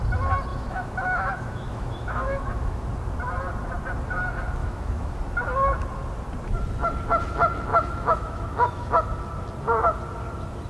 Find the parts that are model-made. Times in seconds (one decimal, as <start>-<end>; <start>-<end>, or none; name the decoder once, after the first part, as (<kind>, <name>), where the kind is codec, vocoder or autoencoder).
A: 0.5-2.8 (autoencoder, DAC-VAE); 4.6-5.2; 7.7-8.9